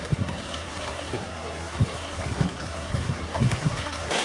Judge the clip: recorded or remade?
remade